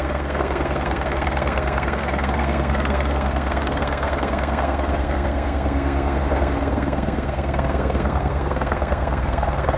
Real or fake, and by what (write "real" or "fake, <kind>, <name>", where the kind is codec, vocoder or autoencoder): fake, codec, SNAC